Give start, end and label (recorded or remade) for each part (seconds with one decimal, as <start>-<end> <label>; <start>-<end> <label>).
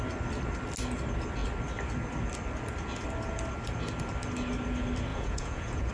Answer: 0.0-5.1 recorded; 5.1-5.9 remade